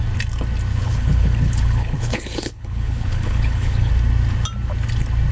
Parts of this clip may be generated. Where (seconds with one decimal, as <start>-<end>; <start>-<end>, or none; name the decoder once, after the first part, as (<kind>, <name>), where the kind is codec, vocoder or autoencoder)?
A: 0.7-3.9 (codec, HILCodec)